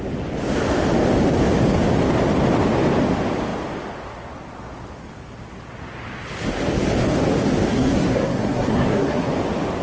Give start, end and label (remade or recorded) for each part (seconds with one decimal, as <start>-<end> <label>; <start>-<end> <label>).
0.0-7.7 recorded; 7.7-9.3 remade; 9.3-9.8 recorded